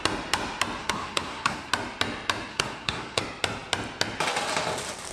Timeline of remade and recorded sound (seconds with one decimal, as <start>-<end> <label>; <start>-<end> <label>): 0.0-0.8 recorded; 0.8-1.7 remade; 1.7-2.5 recorded; 2.5-3.2 remade; 3.2-5.1 recorded